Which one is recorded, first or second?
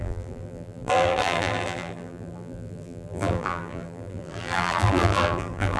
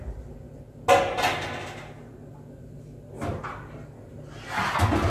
second